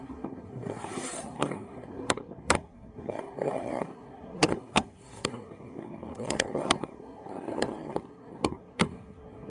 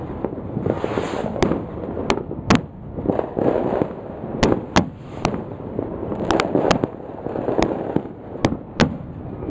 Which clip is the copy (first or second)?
first